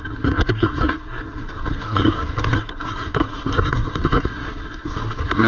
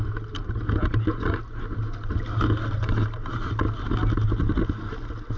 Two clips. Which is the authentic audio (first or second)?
second